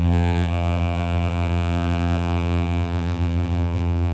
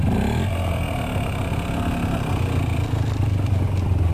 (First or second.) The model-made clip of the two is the first